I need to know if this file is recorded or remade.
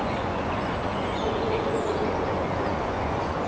remade